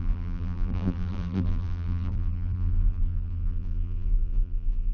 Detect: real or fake fake